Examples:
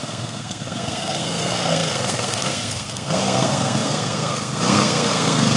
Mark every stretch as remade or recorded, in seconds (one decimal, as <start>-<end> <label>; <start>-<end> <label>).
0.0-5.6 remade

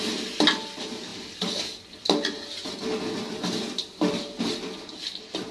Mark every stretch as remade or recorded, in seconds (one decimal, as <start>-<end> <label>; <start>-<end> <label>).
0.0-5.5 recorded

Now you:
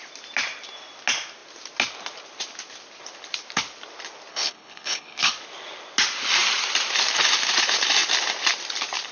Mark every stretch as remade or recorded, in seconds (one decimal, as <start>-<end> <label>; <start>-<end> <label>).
0.0-4.3 recorded; 4.3-5.3 remade; 5.3-9.1 recorded

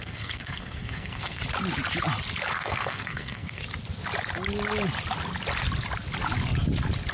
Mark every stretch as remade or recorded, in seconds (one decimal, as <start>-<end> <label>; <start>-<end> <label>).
0.0-1.4 remade; 1.4-2.5 recorded; 2.5-3.6 remade; 3.6-7.1 recorded

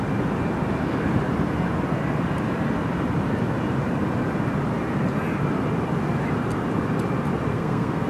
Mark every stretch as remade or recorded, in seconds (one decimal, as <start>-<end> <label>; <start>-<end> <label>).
0.0-7.5 recorded; 7.5-8.1 remade